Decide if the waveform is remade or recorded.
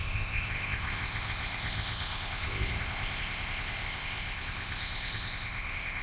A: remade